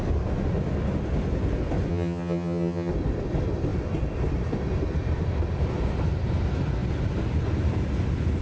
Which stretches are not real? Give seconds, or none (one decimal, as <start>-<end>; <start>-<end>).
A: 1.9-2.9